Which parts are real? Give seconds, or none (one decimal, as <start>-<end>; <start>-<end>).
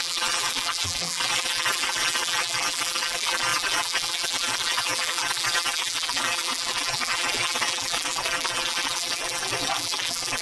none